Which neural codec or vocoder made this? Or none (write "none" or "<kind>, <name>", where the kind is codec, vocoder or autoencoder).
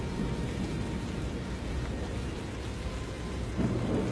none